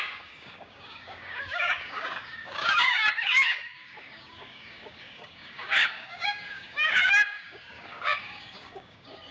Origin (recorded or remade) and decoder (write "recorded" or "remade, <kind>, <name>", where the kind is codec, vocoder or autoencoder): remade, codec, DAC